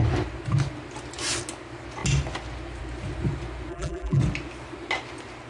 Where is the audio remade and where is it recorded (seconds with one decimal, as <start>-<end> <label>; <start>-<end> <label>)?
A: 0.0-3.7 recorded; 3.7-4.2 remade; 4.2-5.5 recorded